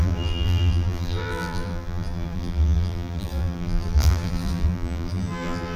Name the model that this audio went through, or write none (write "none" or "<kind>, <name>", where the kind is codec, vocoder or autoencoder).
vocoder, BigVGAN v2